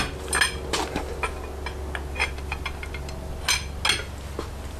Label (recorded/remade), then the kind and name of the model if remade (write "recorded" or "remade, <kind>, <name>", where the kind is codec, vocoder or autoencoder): recorded